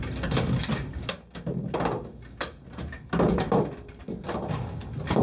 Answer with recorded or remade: recorded